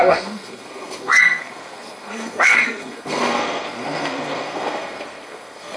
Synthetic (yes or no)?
yes